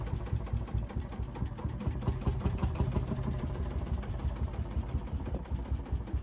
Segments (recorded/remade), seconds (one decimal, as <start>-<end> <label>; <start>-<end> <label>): 0.0-1.1 remade; 1.1-2.2 recorded; 2.2-6.2 remade